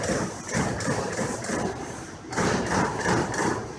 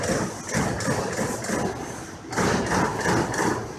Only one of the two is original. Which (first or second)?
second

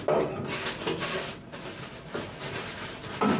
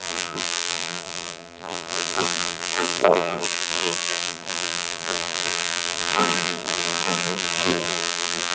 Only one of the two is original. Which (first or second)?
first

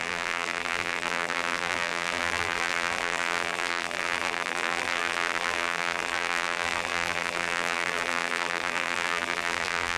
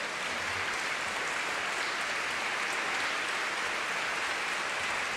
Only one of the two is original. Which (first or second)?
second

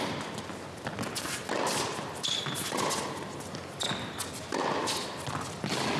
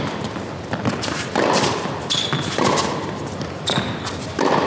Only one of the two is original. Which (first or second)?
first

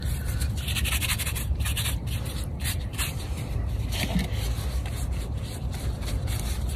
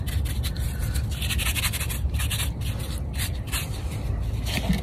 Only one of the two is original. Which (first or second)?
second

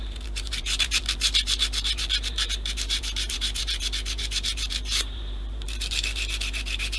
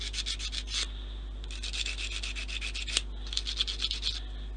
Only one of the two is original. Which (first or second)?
second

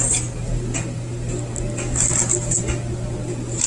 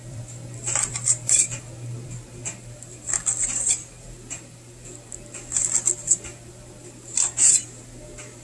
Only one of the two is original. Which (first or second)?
first